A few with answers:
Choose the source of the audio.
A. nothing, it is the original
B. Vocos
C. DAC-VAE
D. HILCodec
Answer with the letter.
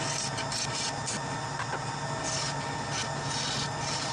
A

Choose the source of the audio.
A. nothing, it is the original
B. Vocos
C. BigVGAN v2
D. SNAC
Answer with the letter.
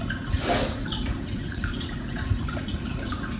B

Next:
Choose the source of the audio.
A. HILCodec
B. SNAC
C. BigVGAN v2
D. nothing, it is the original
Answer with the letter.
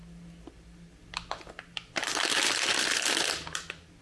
D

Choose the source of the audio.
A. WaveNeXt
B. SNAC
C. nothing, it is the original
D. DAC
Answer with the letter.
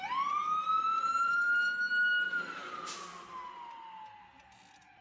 C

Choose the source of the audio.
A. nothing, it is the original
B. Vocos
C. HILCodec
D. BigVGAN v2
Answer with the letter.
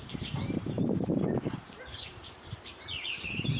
D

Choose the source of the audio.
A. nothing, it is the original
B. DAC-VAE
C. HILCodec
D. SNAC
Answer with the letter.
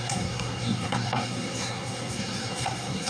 D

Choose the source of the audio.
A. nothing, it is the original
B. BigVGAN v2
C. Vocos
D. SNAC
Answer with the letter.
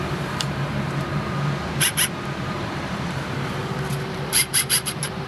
B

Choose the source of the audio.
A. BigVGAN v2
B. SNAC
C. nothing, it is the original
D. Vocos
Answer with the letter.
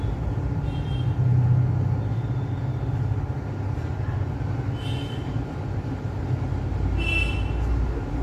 C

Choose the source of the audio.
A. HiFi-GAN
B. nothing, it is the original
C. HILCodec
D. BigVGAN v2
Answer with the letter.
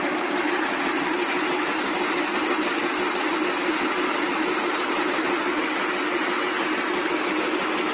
B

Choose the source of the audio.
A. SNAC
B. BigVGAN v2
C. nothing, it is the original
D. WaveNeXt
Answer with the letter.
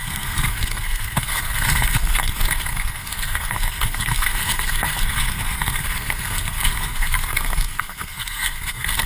A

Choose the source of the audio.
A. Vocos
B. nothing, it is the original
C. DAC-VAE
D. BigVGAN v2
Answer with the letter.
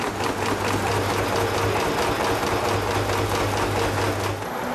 B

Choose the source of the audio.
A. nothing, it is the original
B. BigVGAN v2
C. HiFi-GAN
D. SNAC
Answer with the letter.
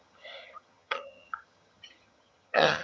C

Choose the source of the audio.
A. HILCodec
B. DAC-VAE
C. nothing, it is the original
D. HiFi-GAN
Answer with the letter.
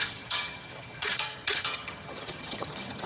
D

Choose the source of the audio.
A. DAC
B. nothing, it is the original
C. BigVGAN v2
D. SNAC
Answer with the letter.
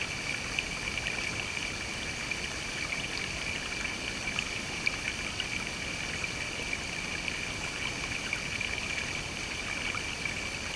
B